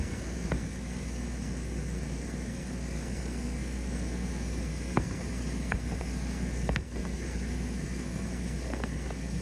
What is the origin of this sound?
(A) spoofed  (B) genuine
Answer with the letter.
A